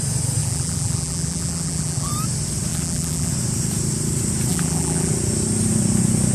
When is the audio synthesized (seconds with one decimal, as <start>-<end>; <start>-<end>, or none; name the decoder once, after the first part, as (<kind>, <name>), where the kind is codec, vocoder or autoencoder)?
0.4-2.1 (vocoder, BigVGAN v2); 2.7-3.3; 4.5-5.1